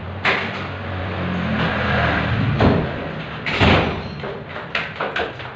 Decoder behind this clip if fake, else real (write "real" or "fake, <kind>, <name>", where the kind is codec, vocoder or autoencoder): real